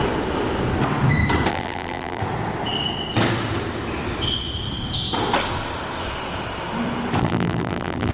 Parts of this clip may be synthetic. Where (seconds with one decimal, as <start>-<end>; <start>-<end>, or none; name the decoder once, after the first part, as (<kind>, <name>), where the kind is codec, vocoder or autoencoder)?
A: 1.5-2.2 (vocoder, BigVGAN v2); 7.2-8.1